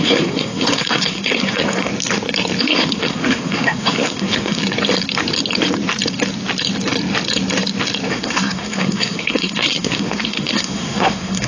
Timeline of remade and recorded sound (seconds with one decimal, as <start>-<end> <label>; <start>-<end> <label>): 0.0-1.9 remade; 1.9-2.6 recorded; 2.6-4.6 remade; 4.6-8.1 recorded; 8.1-11.5 remade